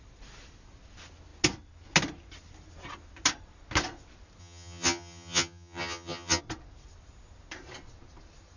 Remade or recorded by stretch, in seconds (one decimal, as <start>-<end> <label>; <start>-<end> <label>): 0.0-4.4 recorded; 4.4-6.4 remade; 6.4-8.6 recorded